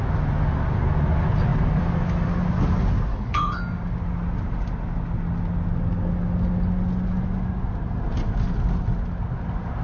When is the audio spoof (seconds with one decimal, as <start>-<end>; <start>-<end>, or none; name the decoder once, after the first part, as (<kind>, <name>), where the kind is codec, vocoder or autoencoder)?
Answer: 3.1-3.6 (codec, HILCodec)